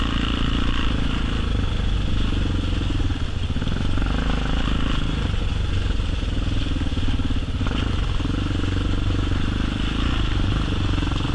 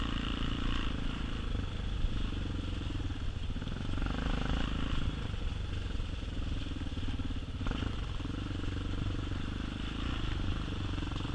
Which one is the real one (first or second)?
first